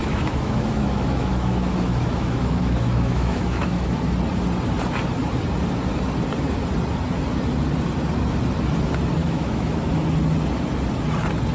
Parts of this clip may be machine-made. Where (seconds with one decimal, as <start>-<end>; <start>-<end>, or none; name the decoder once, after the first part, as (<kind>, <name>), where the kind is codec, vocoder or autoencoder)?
0.0-4.0 (autoencoder, DAC-VAE); 9.2-9.8